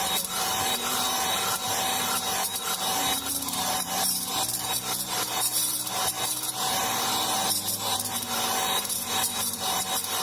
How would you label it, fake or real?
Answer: fake